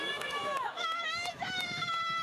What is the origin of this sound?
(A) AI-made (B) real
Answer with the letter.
A